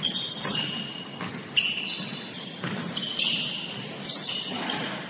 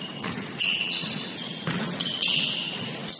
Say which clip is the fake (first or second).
second